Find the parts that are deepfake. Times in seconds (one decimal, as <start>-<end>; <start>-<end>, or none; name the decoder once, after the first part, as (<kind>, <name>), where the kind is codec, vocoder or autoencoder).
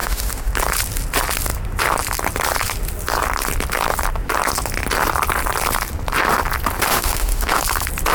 0.0-0.5 (autoencoder, DAC-VAE); 6.9-7.6